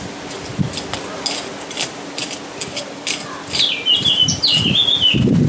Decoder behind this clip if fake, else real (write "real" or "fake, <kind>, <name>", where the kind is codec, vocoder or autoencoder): real